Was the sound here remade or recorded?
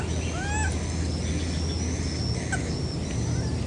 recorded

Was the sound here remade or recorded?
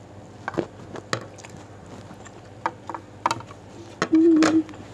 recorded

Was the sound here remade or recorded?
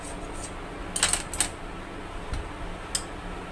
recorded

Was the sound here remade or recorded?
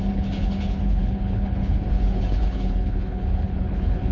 remade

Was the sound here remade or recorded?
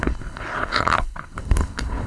remade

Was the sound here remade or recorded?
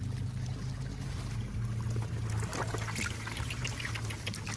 recorded